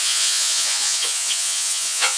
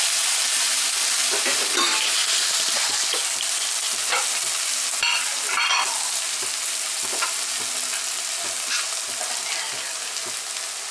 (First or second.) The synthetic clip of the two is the first